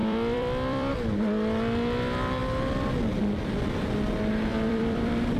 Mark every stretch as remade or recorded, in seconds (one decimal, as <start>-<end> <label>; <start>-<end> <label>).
0.0-0.9 remade; 0.9-4.5 recorded; 4.5-5.4 remade

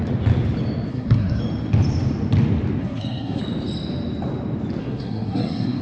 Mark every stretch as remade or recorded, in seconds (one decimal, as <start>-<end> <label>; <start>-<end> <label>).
0.0-0.9 recorded; 0.9-1.4 remade; 1.4-2.8 recorded; 2.8-3.4 remade; 3.4-4.8 recorded; 4.8-5.8 remade

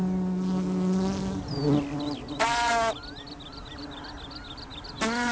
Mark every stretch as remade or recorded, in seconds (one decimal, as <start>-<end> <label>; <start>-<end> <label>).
0.0-3.2 recorded; 3.2-5.3 remade

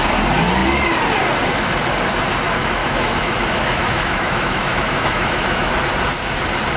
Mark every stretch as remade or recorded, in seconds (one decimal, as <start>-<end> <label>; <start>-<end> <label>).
0.0-2.8 recorded; 2.8-5.7 remade; 5.7-6.8 recorded

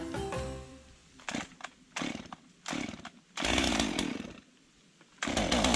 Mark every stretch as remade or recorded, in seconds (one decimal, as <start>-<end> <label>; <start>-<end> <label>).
0.0-5.8 recorded

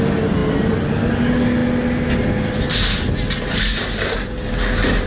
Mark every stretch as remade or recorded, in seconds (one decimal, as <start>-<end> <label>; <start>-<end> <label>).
0.0-5.1 recorded

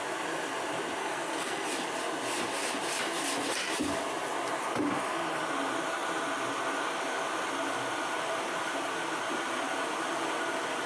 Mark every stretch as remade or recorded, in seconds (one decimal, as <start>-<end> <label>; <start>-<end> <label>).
0.0-1.0 recorded; 1.0-1.7 remade; 1.7-10.9 recorded

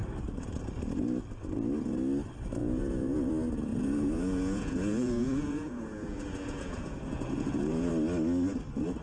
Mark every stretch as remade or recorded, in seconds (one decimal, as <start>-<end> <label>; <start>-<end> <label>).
0.0-2.6 recorded; 2.6-3.3 remade; 3.3-3.7 recorded; 3.7-7.9 remade; 7.9-9.0 recorded